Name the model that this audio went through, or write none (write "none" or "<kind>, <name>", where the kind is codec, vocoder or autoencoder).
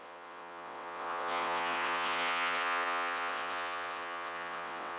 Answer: vocoder, WaveNeXt